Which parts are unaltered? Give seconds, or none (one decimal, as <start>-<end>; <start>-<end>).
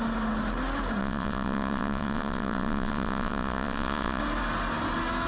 0.0-1.0; 4.2-5.3